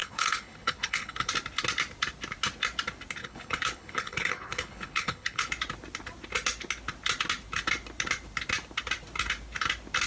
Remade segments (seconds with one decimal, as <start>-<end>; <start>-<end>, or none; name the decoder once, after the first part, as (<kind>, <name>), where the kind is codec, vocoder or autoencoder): 0.0-1.3 (codec, HILCodec); 3.2-5.5